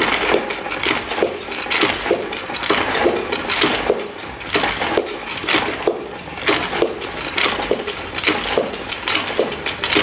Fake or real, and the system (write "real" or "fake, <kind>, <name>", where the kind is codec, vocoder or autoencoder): real